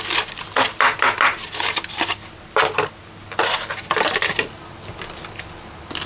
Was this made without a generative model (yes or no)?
yes